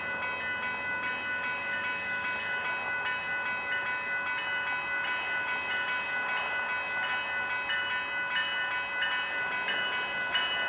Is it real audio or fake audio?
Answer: real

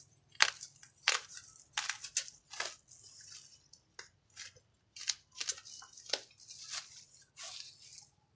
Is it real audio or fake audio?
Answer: real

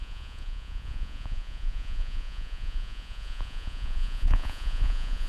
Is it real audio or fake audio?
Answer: fake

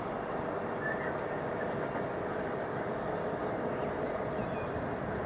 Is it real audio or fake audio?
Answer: real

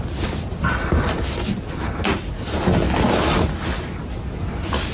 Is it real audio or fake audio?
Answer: real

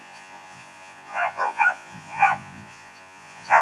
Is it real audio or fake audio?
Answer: fake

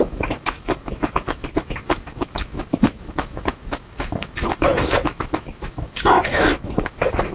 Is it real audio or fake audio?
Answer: fake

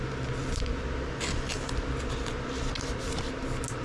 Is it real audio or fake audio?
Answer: real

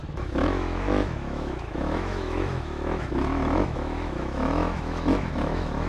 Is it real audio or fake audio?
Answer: fake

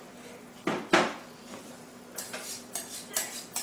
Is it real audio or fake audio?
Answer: real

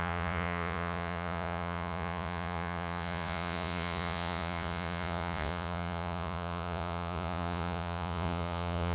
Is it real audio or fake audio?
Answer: fake